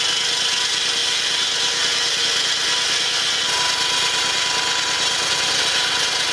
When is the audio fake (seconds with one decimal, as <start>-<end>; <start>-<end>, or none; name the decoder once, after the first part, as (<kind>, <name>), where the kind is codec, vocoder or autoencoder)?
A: none